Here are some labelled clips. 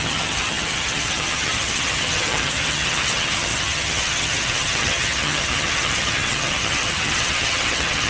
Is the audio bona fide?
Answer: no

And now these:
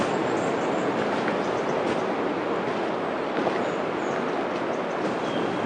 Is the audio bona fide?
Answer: yes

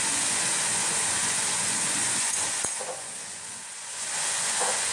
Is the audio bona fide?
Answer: no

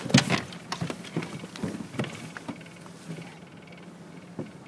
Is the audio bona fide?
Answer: yes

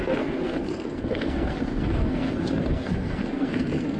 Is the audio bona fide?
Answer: no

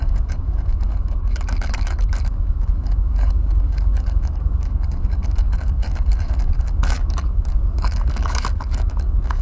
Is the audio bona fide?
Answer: no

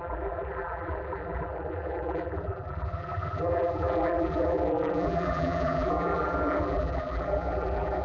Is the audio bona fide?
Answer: no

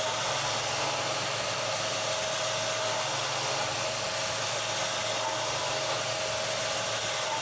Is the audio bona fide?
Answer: yes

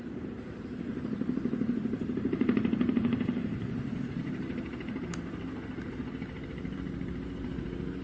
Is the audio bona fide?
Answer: no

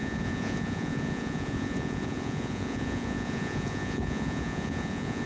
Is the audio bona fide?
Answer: no